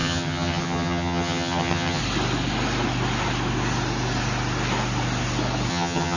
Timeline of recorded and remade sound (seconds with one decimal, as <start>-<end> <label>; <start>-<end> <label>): 0.0-2.0 remade; 2.0-5.7 recorded; 5.7-6.2 remade